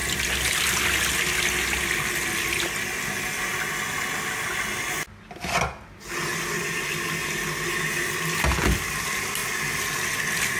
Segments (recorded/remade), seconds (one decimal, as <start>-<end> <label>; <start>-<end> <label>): 0.0-10.6 recorded